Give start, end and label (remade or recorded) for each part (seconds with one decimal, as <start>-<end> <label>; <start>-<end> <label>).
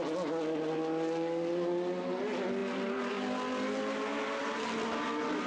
0.0-5.5 recorded